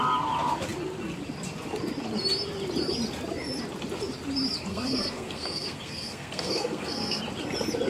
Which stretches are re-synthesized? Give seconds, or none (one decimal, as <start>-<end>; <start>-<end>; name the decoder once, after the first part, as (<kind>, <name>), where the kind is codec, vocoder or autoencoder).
4.7-7.2 (codec, SNAC)